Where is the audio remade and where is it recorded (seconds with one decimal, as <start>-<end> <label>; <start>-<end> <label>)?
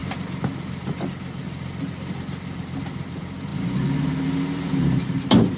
0.0-1.4 remade; 1.4-5.6 recorded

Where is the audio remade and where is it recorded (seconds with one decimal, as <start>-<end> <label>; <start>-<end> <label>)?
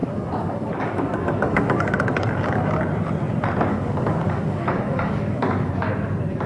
0.0-2.8 remade; 2.8-3.7 recorded; 3.7-5.7 remade; 5.7-6.5 recorded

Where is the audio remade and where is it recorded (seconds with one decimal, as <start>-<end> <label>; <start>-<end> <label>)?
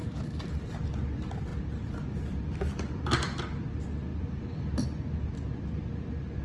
0.0-0.7 remade; 0.7-1.5 recorded; 1.5-3.4 remade; 3.4-4.1 recorded; 4.1-5.9 remade; 5.9-6.4 recorded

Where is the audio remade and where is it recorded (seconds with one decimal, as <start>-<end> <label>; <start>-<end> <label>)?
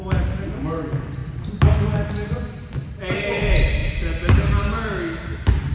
0.0-5.7 recorded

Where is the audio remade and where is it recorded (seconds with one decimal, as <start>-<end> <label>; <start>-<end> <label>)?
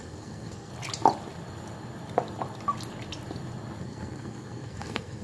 0.0-0.7 remade; 0.7-3.8 recorded; 3.8-5.2 remade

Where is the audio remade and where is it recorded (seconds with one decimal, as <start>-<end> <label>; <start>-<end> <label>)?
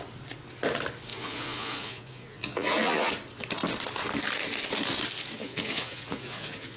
0.0-1.1 recorded; 1.1-3.1 remade; 3.1-5.4 recorded; 5.4-6.8 remade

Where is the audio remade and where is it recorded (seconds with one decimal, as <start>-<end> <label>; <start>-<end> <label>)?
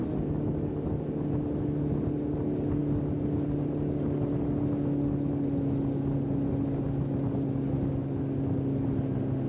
0.0-9.5 recorded